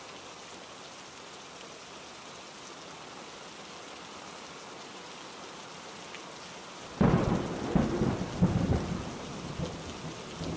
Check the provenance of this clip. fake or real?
real